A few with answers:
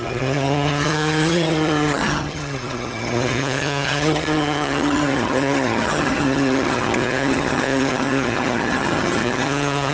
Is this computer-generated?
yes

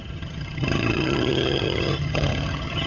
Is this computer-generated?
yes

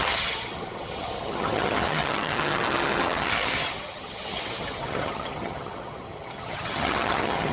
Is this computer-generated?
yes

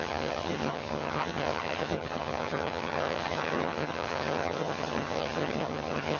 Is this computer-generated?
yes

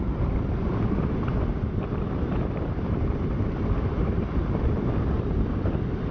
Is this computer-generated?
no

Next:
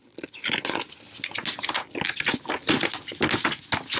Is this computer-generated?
no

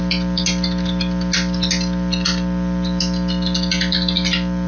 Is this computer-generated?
no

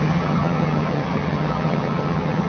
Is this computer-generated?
yes